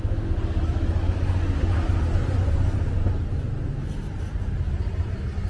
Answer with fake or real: real